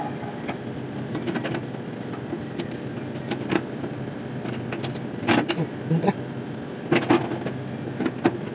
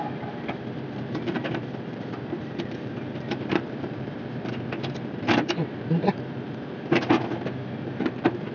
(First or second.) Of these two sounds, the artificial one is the second